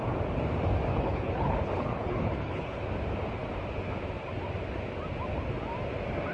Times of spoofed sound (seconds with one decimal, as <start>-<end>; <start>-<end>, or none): 0.9-2.8